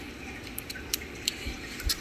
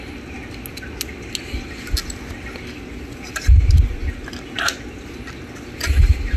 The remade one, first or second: first